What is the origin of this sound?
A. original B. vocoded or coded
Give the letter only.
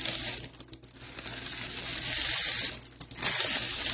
A